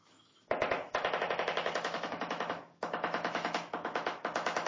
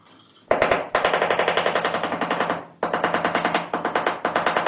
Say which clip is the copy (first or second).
first